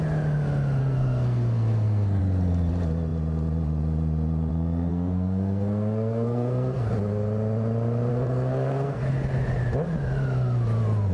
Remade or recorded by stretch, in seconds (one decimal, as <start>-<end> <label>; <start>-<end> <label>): 0.0-0.8 recorded; 0.8-2.2 remade; 2.2-4.9 recorded; 4.9-6.9 remade; 6.9-8.1 recorded; 8.1-9.1 remade; 9.1-11.1 recorded